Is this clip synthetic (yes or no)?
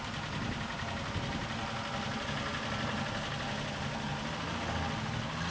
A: no